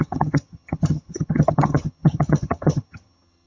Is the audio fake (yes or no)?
yes